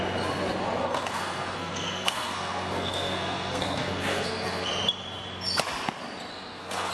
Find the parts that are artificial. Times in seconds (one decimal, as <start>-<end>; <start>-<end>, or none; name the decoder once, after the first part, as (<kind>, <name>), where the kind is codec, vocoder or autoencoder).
0.8-4.7 (codec, SNAC); 6.3-6.9